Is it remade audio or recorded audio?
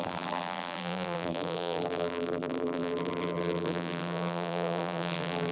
remade